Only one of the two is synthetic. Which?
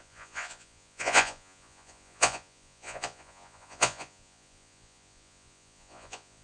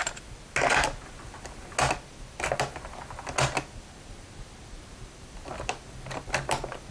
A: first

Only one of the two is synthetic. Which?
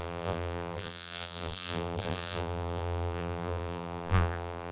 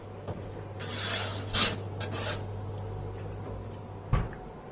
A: first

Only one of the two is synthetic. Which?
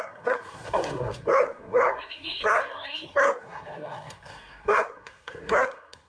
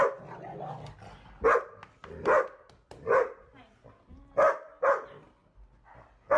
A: first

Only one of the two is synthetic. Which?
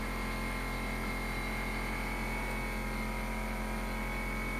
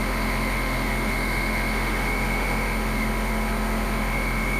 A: second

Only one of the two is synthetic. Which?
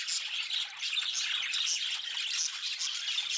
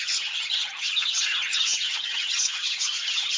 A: second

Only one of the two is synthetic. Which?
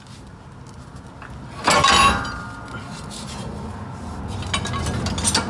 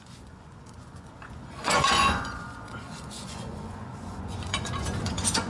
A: second